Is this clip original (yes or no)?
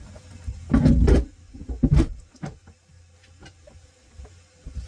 yes